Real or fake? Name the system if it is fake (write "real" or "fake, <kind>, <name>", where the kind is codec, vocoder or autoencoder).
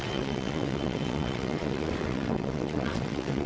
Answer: fake, vocoder, WaveNeXt